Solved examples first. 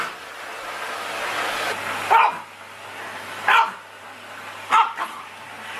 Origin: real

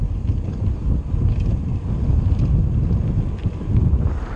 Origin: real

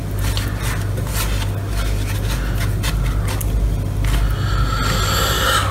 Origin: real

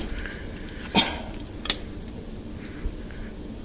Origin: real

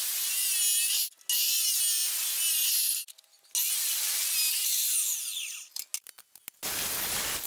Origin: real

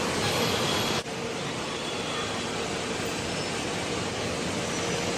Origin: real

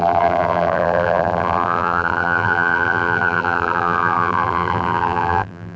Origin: fake